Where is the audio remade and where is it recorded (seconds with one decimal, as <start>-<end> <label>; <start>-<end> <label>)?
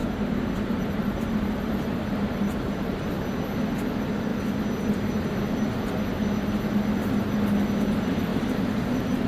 0.0-3.1 remade; 3.1-8.3 recorded; 8.3-9.3 remade